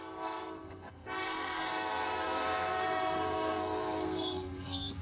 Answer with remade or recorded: remade